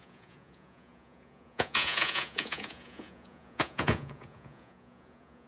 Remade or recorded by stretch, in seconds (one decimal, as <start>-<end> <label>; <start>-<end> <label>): 0.0-5.5 remade